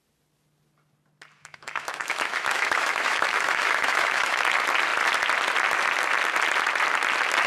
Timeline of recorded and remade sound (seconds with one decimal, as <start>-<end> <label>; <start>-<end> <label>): 0.0-1.4 recorded; 1.4-4.4 remade; 4.4-7.5 recorded